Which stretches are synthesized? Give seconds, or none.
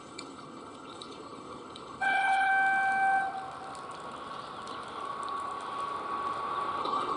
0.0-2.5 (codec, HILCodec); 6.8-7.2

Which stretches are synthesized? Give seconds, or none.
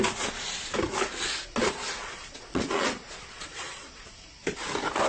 1.6-4.1 (vocoder, Vocos)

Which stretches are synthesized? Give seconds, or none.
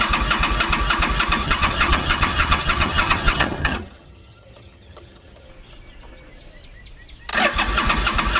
1.4-5.5 (vocoder, HiFi-GAN)